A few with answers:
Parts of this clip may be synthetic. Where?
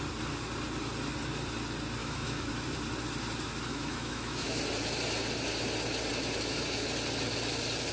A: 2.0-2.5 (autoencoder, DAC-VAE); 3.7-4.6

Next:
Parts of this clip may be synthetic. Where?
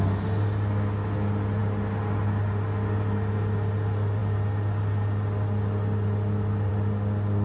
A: none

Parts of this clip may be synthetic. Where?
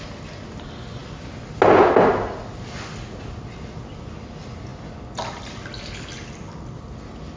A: none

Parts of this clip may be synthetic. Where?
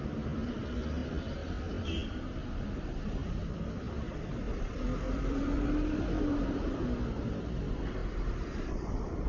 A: 3.2-5.2 (vocoder, BigVGAN v2); 8.0-9.3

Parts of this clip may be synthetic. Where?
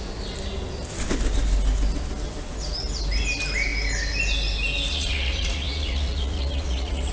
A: 4.9-7.1 (vocoder, Vocos)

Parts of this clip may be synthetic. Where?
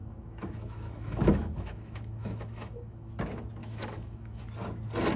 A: 0.0-3.1 (autoencoder, DAC-VAE); 3.6-4.4